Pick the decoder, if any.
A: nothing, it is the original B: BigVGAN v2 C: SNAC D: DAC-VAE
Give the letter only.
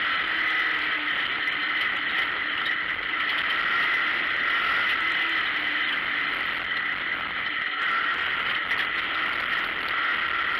A